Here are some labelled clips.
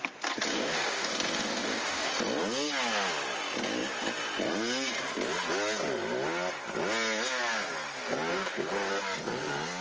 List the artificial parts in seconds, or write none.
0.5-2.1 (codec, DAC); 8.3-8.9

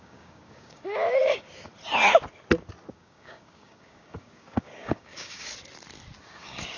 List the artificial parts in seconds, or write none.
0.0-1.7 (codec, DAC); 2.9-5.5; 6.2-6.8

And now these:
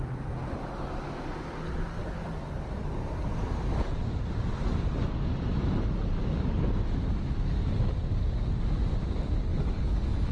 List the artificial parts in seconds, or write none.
2.0-3.0 (codec, DAC); 9.5-10.3

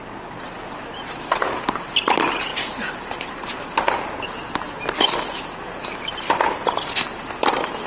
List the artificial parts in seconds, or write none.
none

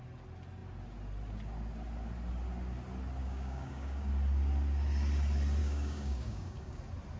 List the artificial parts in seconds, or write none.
3.2-4.1 (codec, DAC); 5.6-6.8

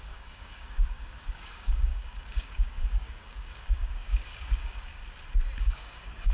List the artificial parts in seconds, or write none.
0.0-5.0 (codec, DAC); 5.6-6.3